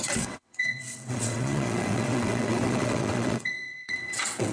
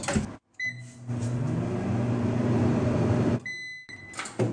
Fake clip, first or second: first